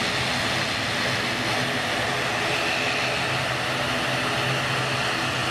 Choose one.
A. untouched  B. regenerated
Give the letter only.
A